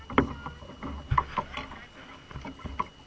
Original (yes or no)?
yes